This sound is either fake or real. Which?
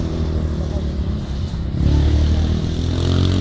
real